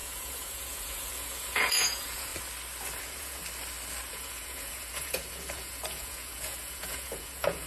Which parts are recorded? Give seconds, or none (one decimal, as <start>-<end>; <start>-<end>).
2.3-3.0; 3.4-4.1